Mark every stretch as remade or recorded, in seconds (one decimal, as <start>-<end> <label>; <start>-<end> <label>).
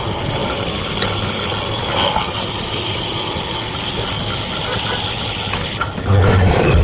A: 0.0-6.8 recorded